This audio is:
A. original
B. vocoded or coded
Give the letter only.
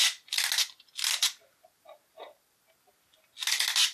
A